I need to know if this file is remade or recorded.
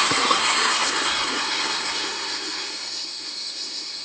remade